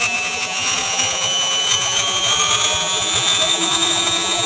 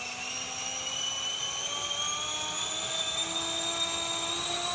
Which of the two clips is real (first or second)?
second